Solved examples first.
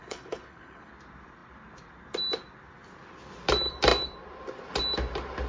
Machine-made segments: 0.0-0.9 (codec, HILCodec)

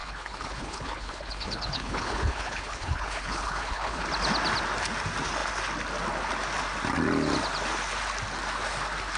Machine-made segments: 0.0-4.0 (codec, HILCodec)

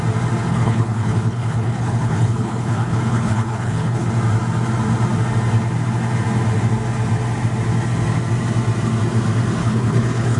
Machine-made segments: 0.5-4.1 (codec, HILCodec); 9.6-10.4

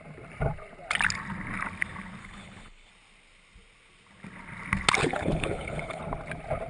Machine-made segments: 2.2-2.9 (codec, HILCodec); 5.0-6.0

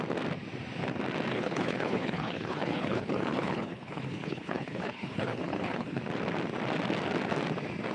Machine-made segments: 1.3-6.0 (codec, HILCodec)

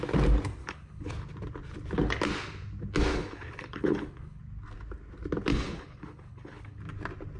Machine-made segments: 0.6-1.1 (codec, HILCodec); 3.1-4.4; 5.5-6.8

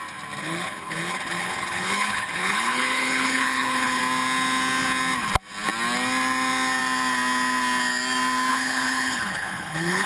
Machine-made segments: 0.4-4.0 (codec, HILCodec); 8.5-10.1